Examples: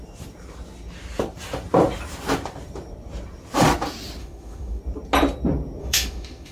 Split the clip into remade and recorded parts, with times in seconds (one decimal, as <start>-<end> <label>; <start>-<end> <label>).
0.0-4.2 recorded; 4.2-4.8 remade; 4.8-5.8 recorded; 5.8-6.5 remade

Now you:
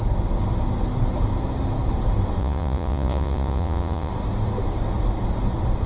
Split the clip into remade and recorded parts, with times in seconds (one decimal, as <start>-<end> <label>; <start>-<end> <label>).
0.0-2.4 recorded; 2.4-4.1 remade; 4.1-5.9 recorded

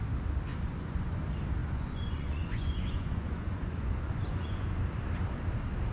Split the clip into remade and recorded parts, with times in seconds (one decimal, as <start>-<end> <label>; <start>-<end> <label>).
0.0-0.5 recorded; 0.5-1.2 remade; 1.2-1.6 recorded; 1.6-4.7 remade; 4.7-5.9 recorded

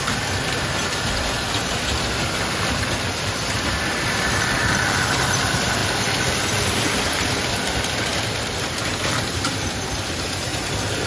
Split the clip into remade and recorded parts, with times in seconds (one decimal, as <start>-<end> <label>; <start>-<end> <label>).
0.0-5.8 remade; 5.8-6.7 recorded; 6.7-10.5 remade; 10.5-11.1 recorded

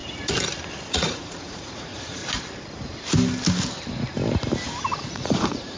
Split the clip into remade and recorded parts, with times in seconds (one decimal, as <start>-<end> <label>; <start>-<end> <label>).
0.0-0.9 recorded; 0.9-2.2 remade; 2.2-5.1 recorded; 5.1-5.8 remade